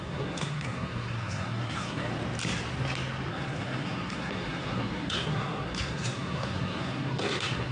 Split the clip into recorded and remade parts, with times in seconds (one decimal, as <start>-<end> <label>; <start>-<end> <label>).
0.0-2.1 remade; 2.1-3.3 recorded; 3.3-7.7 remade